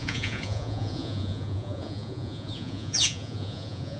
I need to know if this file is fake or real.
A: fake